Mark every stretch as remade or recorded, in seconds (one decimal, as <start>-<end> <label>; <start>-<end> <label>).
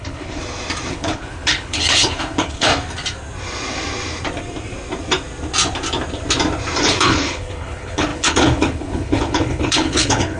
0.0-0.4 remade; 0.4-0.9 recorded; 0.9-2.7 remade; 2.7-6.8 recorded; 6.8-10.4 remade